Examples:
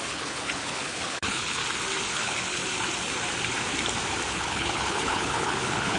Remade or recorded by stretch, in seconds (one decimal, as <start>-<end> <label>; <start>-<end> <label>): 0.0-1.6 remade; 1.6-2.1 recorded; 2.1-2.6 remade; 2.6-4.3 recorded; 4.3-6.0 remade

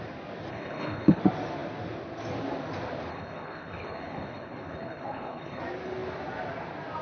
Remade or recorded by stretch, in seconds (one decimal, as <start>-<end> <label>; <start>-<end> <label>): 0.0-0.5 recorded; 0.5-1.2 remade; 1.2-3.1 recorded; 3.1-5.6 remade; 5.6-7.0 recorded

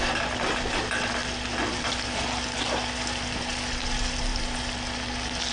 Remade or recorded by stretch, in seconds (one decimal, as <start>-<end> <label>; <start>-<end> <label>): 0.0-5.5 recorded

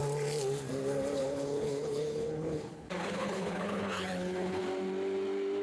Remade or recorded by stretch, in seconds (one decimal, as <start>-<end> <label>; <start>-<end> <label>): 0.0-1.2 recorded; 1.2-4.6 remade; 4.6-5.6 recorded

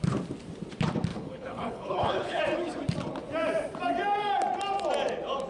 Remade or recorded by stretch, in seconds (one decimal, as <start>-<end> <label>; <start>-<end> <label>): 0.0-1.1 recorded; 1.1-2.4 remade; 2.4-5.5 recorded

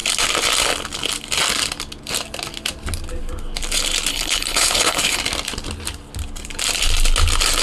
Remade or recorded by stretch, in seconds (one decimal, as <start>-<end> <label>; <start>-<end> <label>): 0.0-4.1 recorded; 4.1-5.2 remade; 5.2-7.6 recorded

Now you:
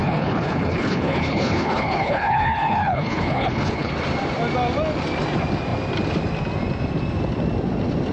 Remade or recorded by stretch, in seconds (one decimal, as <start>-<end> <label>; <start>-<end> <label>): 0.0-3.9 remade; 3.9-8.1 recorded

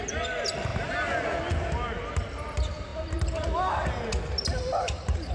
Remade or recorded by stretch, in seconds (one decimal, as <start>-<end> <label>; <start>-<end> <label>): 0.0-5.3 recorded